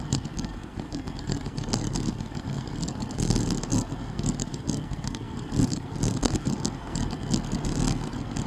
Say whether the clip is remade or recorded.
remade